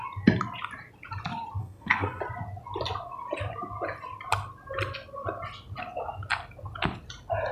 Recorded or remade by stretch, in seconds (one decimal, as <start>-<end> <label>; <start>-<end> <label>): 0.0-1.6 recorded; 1.6-2.2 remade; 2.2-7.5 recorded